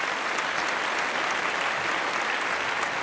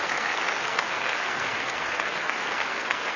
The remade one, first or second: second